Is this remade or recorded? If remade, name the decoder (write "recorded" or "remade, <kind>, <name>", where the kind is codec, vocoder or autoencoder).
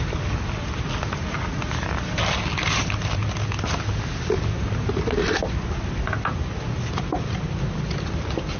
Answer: recorded